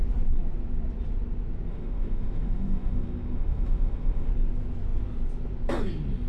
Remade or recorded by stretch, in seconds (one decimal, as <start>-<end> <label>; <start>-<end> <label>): 0.0-1.7 recorded; 1.7-4.3 remade; 4.3-6.3 recorded